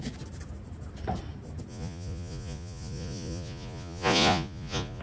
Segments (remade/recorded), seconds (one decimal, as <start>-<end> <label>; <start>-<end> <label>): 0.0-1.7 recorded; 1.7-5.0 remade